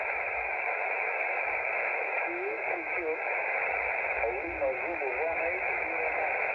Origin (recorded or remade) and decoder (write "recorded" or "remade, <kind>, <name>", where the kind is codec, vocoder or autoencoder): remade, autoencoder, DAC-VAE